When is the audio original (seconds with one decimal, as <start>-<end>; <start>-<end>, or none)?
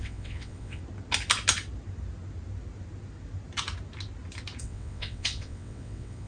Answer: 0.8-4.6